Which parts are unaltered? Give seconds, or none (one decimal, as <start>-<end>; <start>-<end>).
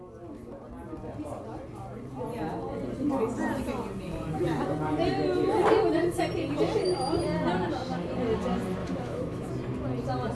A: 0.0-8.8; 9.5-10.3